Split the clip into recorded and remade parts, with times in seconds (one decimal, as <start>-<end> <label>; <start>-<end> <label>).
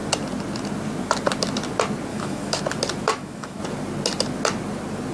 0.0-2.1 recorded; 2.1-2.6 remade; 2.6-3.1 recorded; 3.1-3.6 remade; 3.6-5.1 recorded